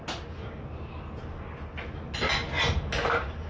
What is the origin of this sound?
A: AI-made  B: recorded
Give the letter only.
B